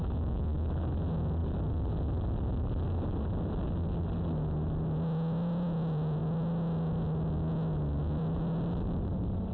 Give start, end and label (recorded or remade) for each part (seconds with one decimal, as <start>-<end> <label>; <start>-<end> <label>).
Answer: 0.0-0.9 remade; 0.9-9.5 recorded